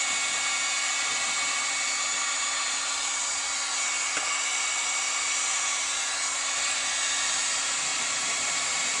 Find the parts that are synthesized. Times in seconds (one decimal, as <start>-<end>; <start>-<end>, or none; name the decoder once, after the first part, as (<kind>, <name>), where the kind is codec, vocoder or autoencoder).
7.9-9.0 (vocoder, BigVGAN v2)